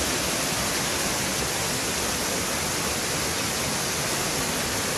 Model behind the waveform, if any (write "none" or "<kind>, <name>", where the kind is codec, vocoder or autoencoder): none